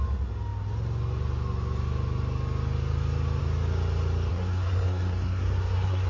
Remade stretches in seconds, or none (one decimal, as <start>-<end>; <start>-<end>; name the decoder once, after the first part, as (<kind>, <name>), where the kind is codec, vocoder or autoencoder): 4.3-6.1 (codec, SNAC)